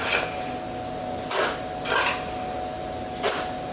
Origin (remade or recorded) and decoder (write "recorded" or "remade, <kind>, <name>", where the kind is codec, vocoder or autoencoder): recorded